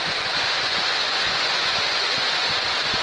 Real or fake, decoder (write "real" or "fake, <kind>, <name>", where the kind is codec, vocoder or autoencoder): fake, vocoder, Vocos